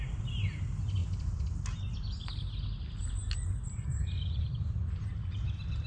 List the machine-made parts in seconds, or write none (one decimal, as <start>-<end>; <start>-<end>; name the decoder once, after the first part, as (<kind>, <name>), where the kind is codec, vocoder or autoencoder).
none